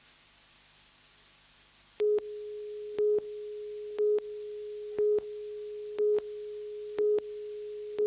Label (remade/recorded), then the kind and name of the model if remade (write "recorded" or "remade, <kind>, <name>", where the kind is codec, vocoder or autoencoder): recorded